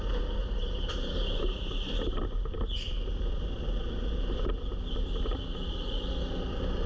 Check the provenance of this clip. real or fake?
real